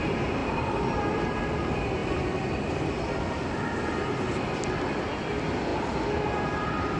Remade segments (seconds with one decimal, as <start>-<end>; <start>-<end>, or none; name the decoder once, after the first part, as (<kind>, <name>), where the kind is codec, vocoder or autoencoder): 0.4-1.6 (vocoder, BigVGAN v2); 2.0-3.0; 5.7-6.3